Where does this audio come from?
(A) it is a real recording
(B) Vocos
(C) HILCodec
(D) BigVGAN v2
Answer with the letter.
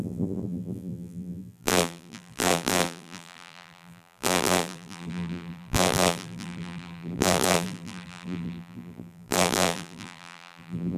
D